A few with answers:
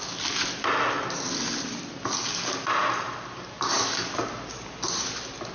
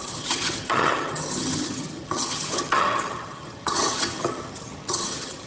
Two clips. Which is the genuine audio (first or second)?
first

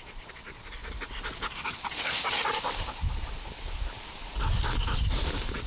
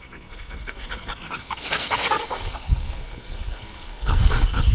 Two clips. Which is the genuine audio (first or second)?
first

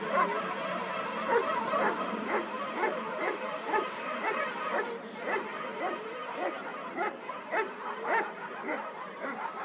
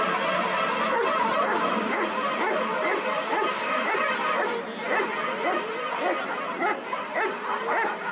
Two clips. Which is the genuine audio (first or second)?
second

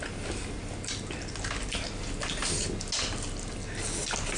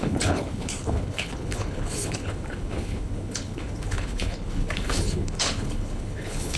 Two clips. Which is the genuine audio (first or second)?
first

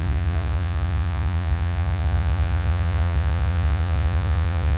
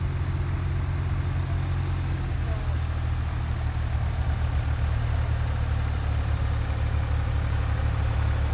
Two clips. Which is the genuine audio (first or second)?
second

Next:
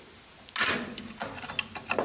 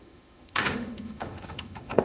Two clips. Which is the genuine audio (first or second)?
first